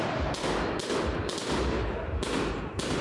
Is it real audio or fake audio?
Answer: real